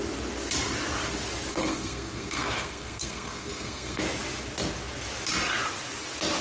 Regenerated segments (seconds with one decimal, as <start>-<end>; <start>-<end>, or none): 1.5-4.0